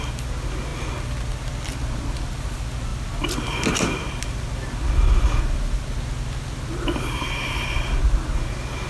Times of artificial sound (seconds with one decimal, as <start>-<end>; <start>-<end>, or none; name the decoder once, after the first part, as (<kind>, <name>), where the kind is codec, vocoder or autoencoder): none